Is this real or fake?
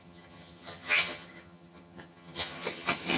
fake